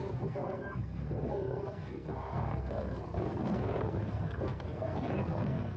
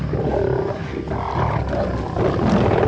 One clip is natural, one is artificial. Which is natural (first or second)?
second